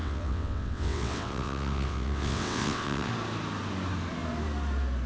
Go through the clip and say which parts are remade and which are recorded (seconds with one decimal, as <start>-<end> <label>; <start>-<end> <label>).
0.0-3.1 remade; 3.1-5.1 recorded